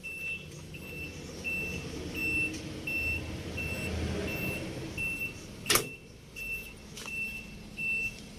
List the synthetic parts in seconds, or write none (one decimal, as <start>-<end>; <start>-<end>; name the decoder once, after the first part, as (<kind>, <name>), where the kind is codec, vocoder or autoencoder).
none